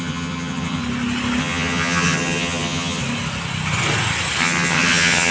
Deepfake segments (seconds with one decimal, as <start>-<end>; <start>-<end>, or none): 0.0-0.8; 1.4-3.0; 4.4-5.3